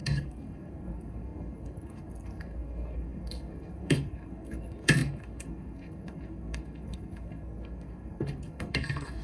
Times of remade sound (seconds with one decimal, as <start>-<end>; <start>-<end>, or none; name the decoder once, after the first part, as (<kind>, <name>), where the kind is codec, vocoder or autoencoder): 0.0-9.2 (codec, SNAC)

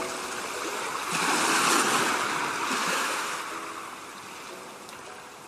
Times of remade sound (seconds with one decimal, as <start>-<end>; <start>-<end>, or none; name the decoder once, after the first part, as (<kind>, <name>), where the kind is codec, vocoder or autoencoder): 2.8-3.4 (autoencoder, DAC-VAE)

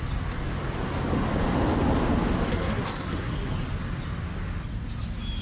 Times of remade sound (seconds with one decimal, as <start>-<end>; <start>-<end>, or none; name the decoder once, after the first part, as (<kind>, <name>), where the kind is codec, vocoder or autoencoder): 2.5-3.5 (codec, SNAC)

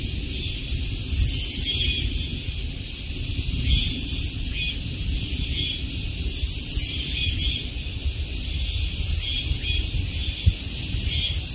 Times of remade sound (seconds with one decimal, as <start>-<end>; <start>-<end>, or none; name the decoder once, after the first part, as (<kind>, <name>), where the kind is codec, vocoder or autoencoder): none

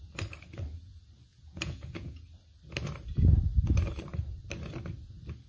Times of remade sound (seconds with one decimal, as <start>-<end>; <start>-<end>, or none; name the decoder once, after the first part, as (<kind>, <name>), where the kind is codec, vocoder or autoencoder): 1.3-2.2 (vocoder, Vocos)